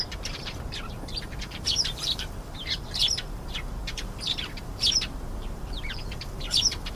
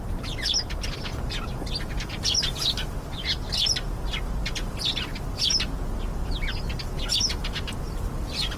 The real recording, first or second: second